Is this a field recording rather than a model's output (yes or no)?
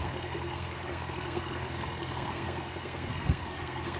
no